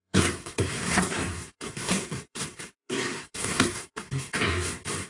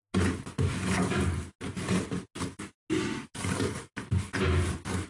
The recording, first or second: second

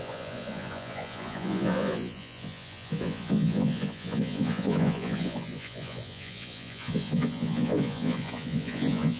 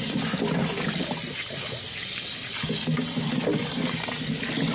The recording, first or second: second